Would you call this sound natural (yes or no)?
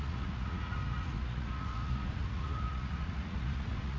no